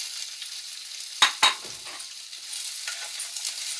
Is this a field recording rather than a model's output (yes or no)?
yes